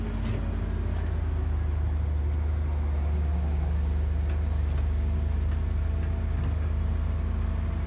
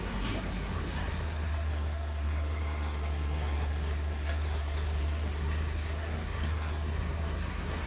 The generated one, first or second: second